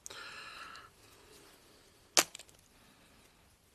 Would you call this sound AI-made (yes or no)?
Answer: no